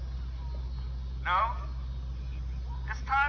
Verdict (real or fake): real